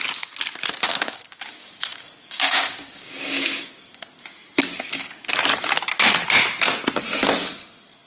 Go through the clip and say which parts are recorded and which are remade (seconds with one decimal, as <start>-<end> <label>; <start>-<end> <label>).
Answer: 0.0-0.9 recorded; 0.9-4.0 remade; 4.0-4.7 recorded; 4.7-5.3 remade; 5.3-8.1 recorded